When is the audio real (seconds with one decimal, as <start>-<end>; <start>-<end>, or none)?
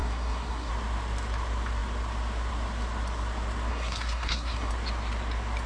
0.7-3.7; 4.7-5.7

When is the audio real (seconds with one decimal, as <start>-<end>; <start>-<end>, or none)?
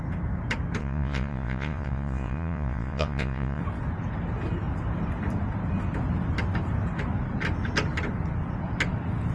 0.0-0.8; 3.6-9.3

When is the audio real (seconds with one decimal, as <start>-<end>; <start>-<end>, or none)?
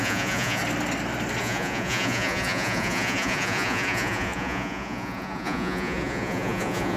0.6-1.4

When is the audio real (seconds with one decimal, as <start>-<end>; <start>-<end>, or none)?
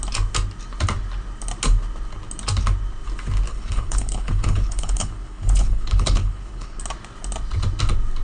0.0-3.5; 6.8-8.2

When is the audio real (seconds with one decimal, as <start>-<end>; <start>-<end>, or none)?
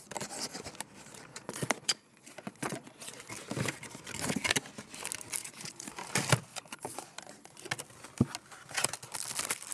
0.0-1.3; 3.3-5.4; 5.9-6.5; 7.7-9.7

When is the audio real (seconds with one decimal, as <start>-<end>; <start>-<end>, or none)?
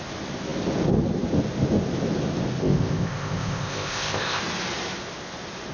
0.0-2.6; 4.4-5.7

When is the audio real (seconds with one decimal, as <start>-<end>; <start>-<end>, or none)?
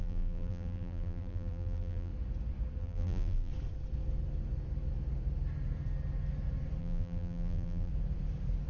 2.1-2.8; 3.5-6.8; 7.9-8.7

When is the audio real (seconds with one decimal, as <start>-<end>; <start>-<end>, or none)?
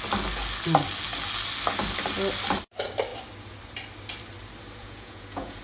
0.0-4.8